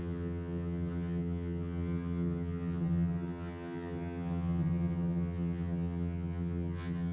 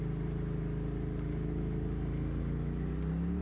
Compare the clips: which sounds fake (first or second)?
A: first